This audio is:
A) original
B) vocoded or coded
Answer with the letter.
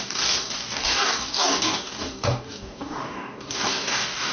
B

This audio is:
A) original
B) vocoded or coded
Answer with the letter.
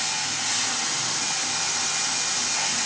A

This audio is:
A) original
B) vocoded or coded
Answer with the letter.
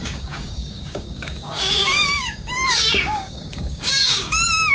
B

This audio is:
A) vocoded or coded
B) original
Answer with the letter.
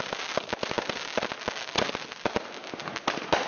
B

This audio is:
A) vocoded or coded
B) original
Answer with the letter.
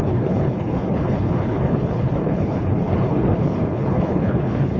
A